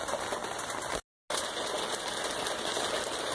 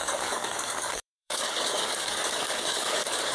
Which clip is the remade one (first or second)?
second